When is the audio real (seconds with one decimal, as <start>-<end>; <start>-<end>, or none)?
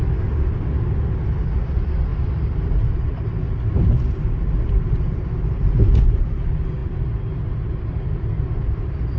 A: 0.0-9.2